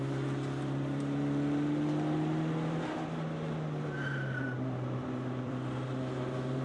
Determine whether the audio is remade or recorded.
remade